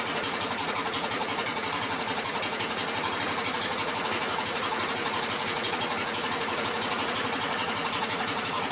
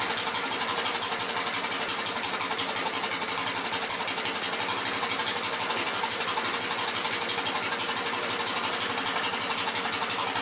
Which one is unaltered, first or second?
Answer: second